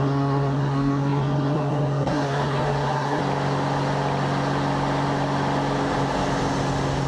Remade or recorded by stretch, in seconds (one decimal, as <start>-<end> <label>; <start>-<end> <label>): 0.0-3.2 remade; 3.2-7.1 recorded